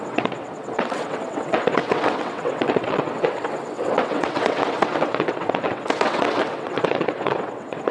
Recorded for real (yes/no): no